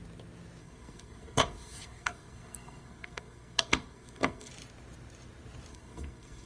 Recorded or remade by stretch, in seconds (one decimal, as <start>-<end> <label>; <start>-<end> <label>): 0.0-0.6 recorded; 0.6-4.5 remade; 4.5-5.7 recorded; 5.7-6.5 remade

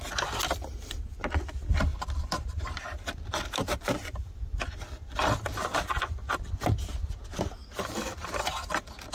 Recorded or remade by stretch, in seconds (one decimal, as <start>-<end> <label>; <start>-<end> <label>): 0.0-1.9 recorded; 1.9-4.6 remade; 4.6-9.1 recorded

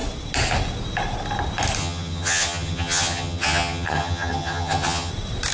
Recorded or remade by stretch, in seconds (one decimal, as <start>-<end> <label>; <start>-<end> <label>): 0.0-1.8 recorded; 1.8-5.1 remade; 5.1-5.5 recorded

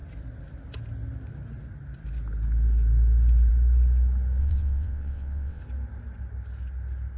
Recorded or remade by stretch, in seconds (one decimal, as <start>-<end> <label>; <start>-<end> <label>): 0.0-4.4 recorded; 4.4-5.6 remade; 5.6-7.2 recorded

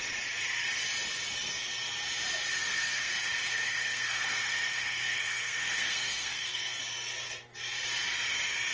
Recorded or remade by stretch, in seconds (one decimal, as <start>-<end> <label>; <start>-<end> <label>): 0.0-2.6 recorded; 2.6-3.1 remade; 3.1-3.5 recorded; 3.5-6.8 remade; 6.8-8.7 recorded

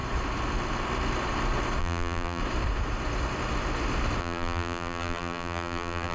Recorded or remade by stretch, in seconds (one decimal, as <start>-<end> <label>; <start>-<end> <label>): 0.0-1.8 recorded; 1.8-2.4 remade; 2.4-4.2 recorded; 4.2-6.1 remade

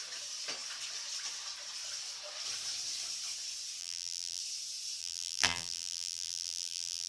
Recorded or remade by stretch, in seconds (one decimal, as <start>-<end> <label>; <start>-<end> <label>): 0.0-3.8 recorded; 3.8-4.4 remade; 4.4-5.0 recorded; 5.0-7.1 remade